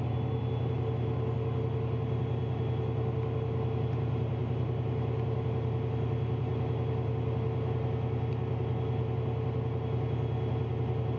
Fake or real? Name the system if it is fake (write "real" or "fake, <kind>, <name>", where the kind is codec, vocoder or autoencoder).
real